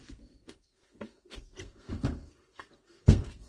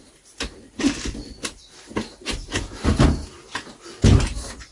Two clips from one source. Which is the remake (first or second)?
first